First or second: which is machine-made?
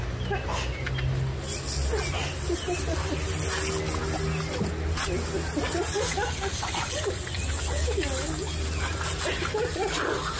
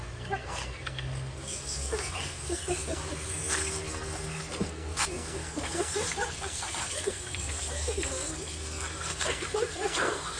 second